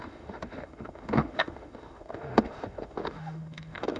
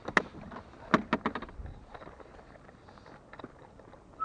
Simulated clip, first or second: first